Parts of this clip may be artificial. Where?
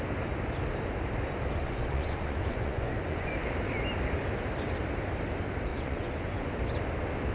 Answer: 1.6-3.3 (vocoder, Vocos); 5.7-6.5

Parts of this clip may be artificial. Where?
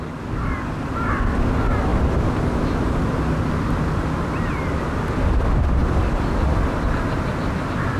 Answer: none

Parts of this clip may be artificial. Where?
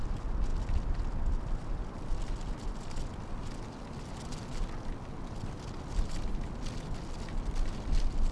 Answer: none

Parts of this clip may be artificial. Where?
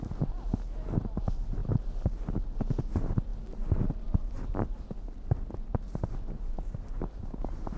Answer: none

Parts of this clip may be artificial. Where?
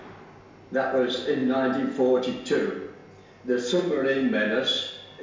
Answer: none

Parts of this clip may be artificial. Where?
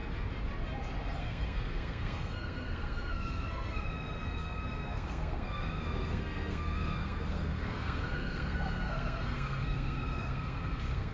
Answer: 1.2-11.1 (codec, SNAC)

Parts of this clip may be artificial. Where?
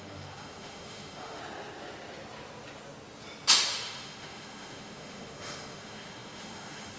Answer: 0.0-1.4 (autoencoder, DAC-VAE); 3.7-7.0